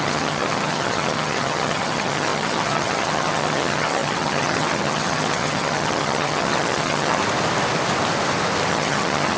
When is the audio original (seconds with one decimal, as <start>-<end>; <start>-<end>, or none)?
7.2-8.7